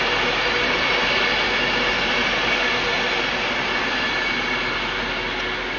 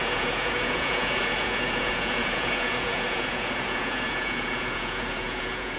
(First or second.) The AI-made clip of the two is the second